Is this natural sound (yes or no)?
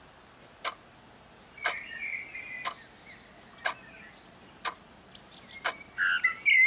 yes